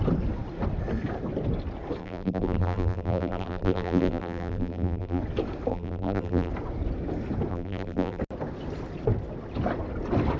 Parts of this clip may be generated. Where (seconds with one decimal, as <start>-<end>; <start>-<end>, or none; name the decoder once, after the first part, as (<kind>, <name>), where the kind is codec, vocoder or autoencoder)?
2.0-5.2 (vocoder, BigVGAN v2); 5.7-6.5; 7.5-8.2